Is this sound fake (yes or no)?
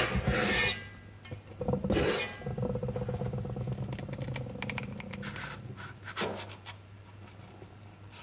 no